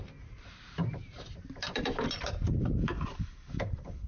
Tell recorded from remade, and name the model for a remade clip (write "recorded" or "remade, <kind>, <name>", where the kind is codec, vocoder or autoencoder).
remade, vocoder, BigVGAN v2